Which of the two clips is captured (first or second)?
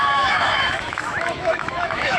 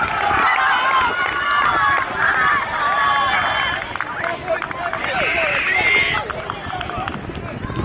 second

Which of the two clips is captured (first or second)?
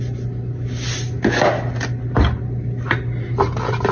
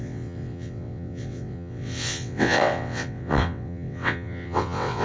first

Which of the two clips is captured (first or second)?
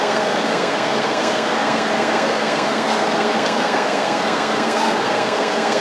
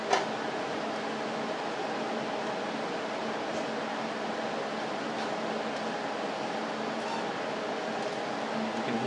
second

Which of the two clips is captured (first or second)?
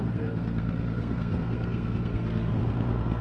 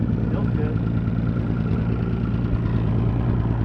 second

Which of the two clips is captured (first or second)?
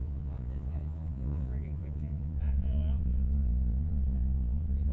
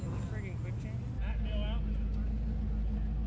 second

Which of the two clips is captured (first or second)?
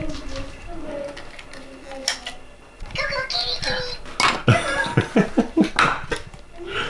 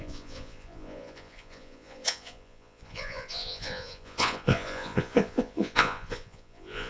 first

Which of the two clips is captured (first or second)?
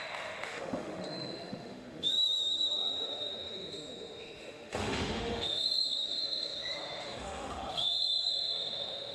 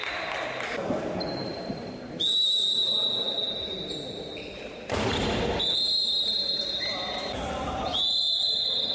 second